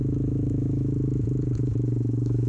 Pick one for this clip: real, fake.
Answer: fake